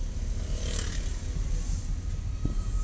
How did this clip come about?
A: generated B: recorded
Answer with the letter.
B